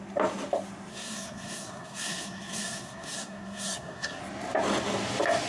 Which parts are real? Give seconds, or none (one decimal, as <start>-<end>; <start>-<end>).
0.0-0.9; 4.2-5.5